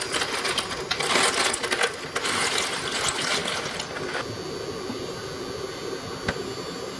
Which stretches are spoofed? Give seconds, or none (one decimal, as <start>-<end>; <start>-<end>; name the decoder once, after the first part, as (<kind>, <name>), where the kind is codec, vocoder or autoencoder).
none